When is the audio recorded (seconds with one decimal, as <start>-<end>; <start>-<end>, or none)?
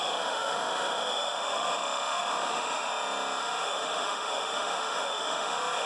2.9-3.4